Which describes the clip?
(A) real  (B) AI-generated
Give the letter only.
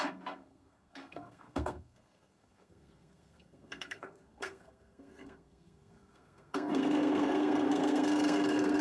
B